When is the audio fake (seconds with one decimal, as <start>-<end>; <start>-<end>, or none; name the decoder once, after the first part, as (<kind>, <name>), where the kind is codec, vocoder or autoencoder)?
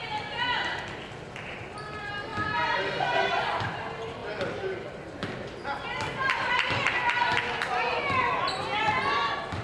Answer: 2.3-3.6 (vocoder, BigVGAN v2); 4.2-6.9